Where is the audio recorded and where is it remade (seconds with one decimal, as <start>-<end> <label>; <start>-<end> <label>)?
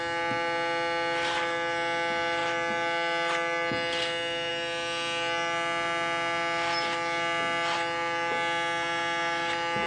0.0-9.9 recorded